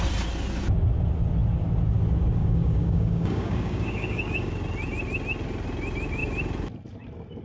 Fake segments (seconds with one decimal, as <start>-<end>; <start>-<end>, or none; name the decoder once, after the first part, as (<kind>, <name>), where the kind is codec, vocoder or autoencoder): 2.4-4.5 (codec, DAC)